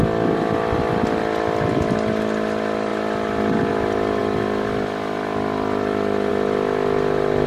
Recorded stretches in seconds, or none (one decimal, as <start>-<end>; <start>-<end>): 0.0-7.5